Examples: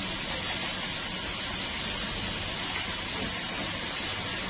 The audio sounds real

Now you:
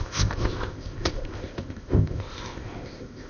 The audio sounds fake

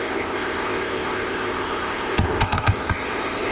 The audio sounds fake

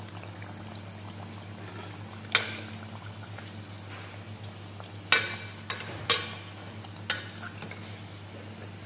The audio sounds real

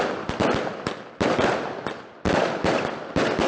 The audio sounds real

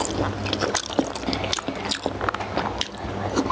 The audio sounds real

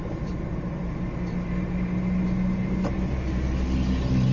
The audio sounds real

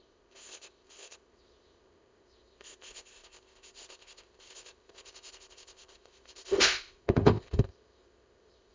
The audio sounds fake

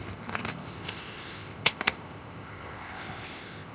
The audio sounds fake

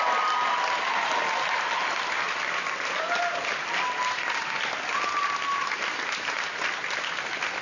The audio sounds real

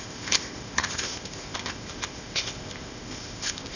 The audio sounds fake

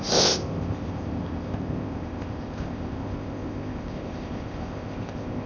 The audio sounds fake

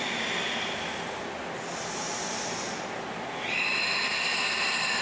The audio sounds real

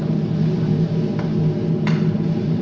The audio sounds real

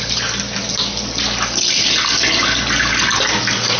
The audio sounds real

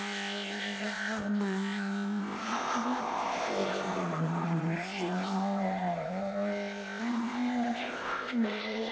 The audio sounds fake